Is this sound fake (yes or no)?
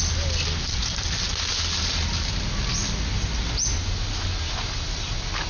no